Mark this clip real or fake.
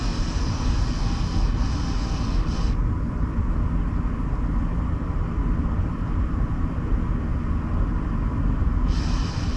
real